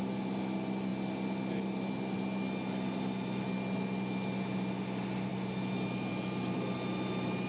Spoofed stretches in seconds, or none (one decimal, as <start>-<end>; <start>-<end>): none